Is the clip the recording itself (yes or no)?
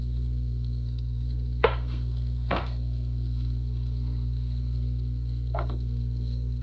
no